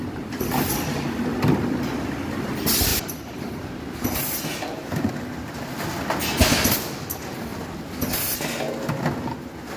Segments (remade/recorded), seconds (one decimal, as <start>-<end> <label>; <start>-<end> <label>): 0.0-2.9 recorded; 2.9-5.1 remade; 5.1-9.8 recorded